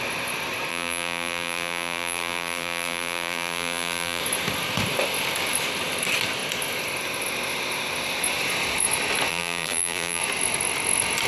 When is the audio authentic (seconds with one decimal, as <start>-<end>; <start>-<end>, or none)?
0.0-0.7; 4.2-9.3; 10.2-11.3